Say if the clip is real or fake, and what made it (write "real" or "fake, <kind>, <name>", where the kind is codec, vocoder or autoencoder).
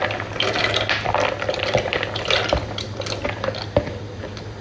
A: real